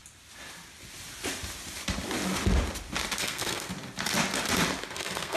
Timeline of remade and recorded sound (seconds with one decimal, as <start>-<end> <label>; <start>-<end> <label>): 0.0-3.2 recorded; 3.2-3.7 remade; 3.7-4.9 recorded; 4.9-5.4 remade